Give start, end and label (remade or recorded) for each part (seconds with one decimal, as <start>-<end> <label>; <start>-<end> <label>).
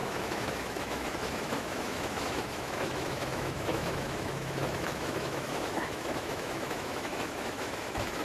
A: 0.0-8.2 remade